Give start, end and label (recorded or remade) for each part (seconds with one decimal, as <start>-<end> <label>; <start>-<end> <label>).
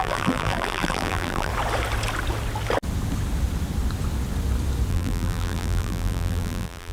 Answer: 0.0-1.5 remade; 1.5-4.9 recorded; 4.9-6.9 remade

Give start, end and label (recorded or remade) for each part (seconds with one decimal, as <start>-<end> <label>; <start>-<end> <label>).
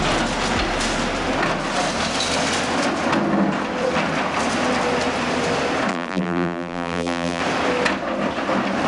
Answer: 0.0-5.9 recorded; 5.9-7.4 remade; 7.4-8.9 recorded